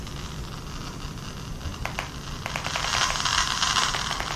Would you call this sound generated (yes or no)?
no